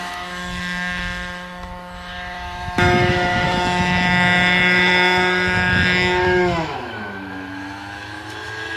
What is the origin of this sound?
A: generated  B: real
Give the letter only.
A